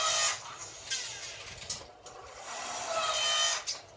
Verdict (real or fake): real